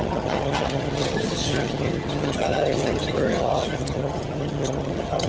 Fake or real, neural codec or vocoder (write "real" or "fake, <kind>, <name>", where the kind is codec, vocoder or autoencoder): fake, vocoder, HiFi-GAN